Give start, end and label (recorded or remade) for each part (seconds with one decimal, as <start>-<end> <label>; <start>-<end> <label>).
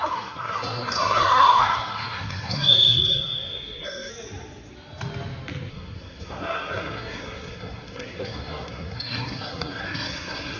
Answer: 0.0-4.1 remade; 4.1-5.7 recorded; 5.7-10.6 remade